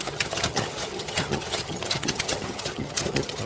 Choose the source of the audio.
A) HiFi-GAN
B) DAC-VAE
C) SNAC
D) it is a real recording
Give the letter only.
A